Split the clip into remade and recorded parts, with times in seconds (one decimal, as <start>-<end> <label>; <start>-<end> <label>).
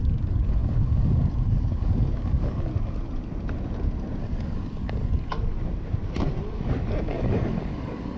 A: 0.0-2.7 remade; 2.7-4.2 recorded; 4.2-5.3 remade; 5.3-7.1 recorded; 7.1-8.2 remade